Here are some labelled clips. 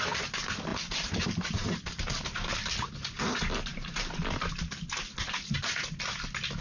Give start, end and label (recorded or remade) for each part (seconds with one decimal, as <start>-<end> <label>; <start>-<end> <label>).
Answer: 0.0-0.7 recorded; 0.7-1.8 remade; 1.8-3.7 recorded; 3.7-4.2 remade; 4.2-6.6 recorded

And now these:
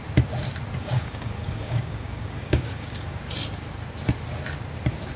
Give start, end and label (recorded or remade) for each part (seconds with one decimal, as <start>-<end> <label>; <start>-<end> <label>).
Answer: 0.0-0.8 recorded; 0.8-3.2 remade; 3.2-5.2 recorded

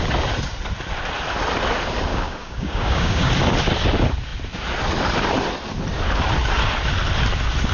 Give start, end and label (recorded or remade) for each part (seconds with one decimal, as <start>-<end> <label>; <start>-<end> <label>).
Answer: 0.0-2.1 recorded; 2.1-3.3 remade; 3.3-7.7 recorded

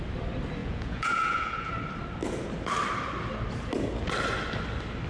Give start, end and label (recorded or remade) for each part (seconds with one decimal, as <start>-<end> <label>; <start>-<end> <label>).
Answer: 0.0-0.6 recorded; 0.6-1.7 remade; 1.7-5.1 recorded